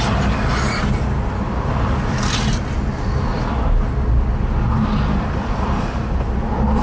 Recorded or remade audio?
recorded